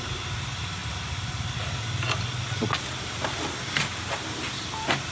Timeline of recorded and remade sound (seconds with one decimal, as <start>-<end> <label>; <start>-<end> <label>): 0.0-5.1 recorded